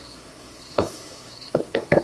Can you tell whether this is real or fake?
fake